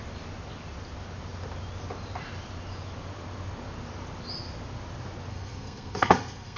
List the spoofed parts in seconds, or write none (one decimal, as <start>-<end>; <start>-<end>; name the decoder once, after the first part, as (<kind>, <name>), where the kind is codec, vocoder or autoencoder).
5.3-6.6 (codec, SNAC)